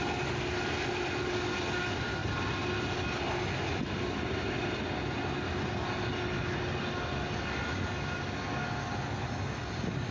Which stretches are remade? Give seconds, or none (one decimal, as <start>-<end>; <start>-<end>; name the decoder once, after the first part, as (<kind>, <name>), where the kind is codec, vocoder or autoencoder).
none